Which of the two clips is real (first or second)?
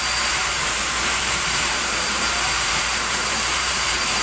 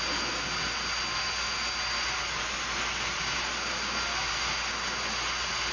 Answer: second